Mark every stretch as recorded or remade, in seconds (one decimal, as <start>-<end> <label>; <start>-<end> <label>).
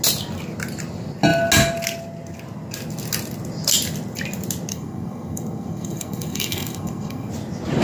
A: 0.0-4.7 recorded; 4.7-7.3 remade; 7.3-7.8 recorded